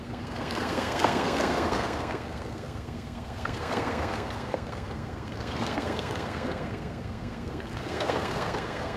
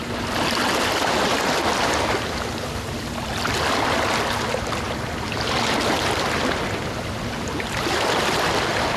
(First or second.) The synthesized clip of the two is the first